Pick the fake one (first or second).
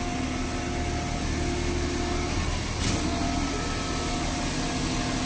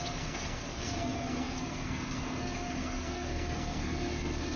second